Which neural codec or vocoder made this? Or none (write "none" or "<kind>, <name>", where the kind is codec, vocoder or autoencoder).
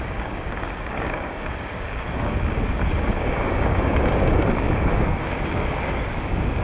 codec, DAC